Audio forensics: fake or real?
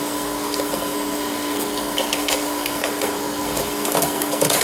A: fake